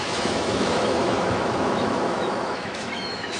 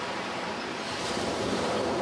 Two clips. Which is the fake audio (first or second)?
first